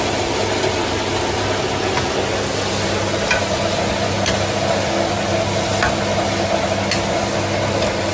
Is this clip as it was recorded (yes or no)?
yes